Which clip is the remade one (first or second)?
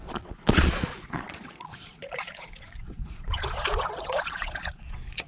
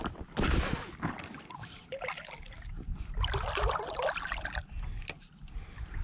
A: first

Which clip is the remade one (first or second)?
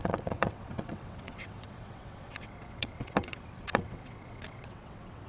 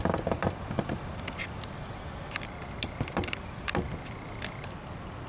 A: first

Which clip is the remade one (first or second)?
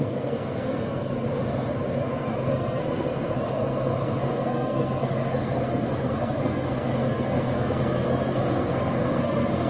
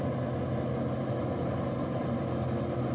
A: first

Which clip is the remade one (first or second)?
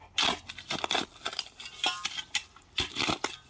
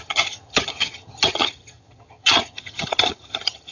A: second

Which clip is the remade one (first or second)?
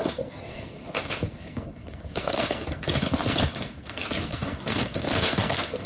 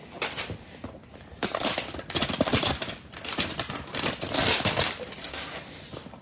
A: first